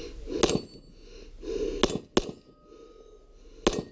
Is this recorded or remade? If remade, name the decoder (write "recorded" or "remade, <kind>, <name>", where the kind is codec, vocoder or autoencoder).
recorded